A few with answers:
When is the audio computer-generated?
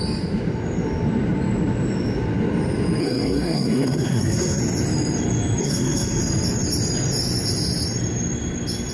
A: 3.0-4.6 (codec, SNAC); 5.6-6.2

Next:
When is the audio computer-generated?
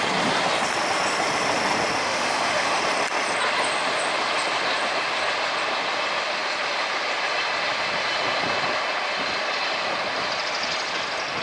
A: 2.0-2.8 (autoencoder, DAC-VAE)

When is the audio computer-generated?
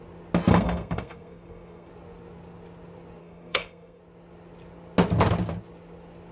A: 0.5-1.9 (codec, SNAC); 3.2-4.0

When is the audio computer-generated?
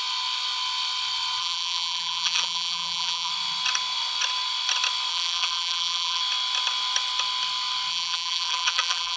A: 1.4-3.3 (vocoder, BigVGAN v2); 5.1-6.2; 7.9-9.2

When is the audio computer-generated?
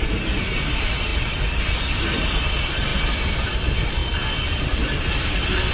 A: none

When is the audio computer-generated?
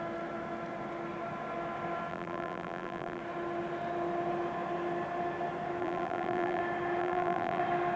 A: 2.1-3.2 (vocoder, BigVGAN v2); 5.8-6.6; 7.0-7.6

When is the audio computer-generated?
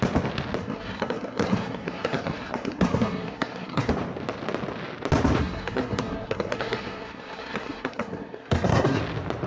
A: 0.6-3.9 (codec, SNAC); 5.4-9.0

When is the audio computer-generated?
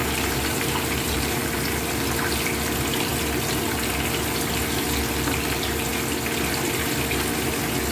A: 0.0-1.4 (vocoder, BigVGAN v2)